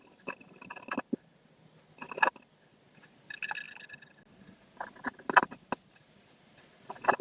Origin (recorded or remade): recorded